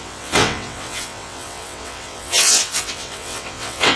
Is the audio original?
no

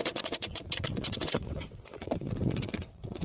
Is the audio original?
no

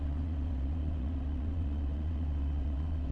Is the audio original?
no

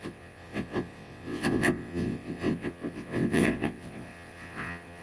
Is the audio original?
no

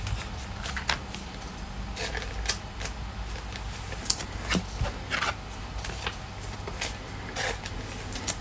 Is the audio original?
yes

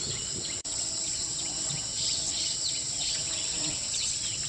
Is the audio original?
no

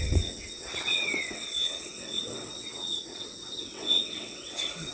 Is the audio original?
no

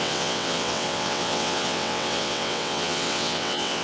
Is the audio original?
no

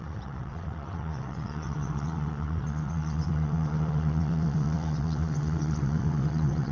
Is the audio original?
no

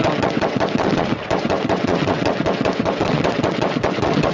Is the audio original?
no